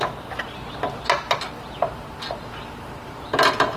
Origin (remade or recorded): recorded